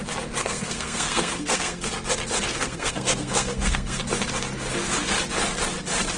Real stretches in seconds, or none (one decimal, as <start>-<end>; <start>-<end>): 0.0-0.4; 1.9-2.5; 4.0-6.2